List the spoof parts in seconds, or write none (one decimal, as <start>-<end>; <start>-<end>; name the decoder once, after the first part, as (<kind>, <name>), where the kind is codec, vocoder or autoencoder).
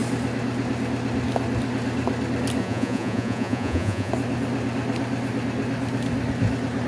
2.6-4.1 (vocoder, Vocos)